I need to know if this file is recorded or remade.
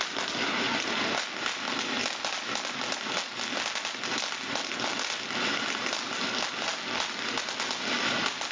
recorded